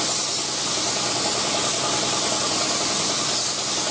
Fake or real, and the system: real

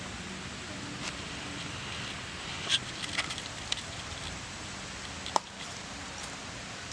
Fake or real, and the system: real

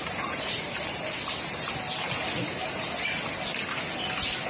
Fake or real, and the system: real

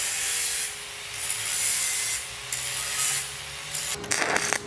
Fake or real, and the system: real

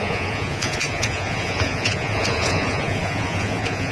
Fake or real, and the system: fake, vocoder, Vocos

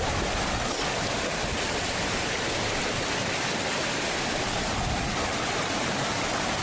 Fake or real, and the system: real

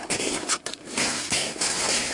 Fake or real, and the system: fake, codec, SNAC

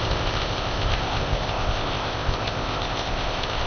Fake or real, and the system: fake, codec, ZipCodec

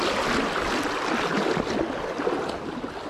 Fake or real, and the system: real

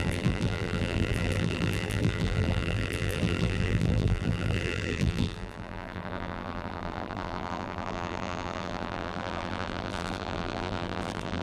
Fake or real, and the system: fake, vocoder, BigVGAN v2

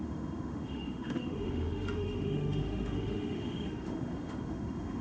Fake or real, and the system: fake, autoencoder, DAC-VAE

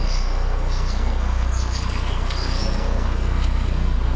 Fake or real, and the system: fake, codec, SNAC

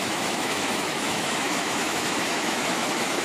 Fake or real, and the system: fake, autoencoder, DAC-VAE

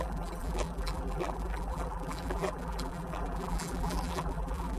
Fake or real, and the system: fake, vocoder, BigVGAN v2